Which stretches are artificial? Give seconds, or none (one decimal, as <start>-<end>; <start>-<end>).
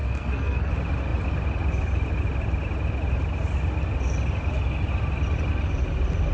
0.0-0.7